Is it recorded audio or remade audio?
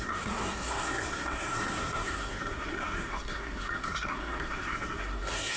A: remade